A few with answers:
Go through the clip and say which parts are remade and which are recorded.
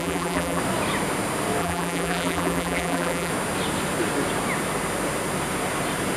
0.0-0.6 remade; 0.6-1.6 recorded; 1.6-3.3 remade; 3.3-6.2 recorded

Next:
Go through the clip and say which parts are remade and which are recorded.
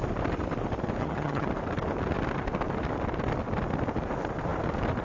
0.0-1.0 recorded; 1.0-1.5 remade; 1.5-5.0 recorded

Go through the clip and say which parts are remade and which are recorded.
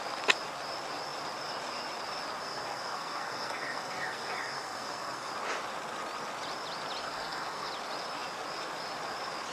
0.0-2.4 recorded; 2.4-5.3 remade; 5.3-7.0 recorded; 7.0-7.7 remade; 7.7-9.5 recorded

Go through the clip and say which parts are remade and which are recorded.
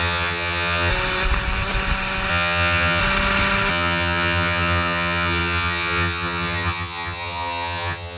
0.0-0.9 remade; 0.9-2.3 recorded; 2.3-3.0 remade; 3.0-3.7 recorded; 3.7-8.2 remade